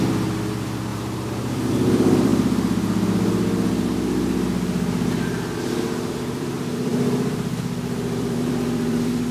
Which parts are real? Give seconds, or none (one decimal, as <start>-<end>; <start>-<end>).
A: 2.3-6.1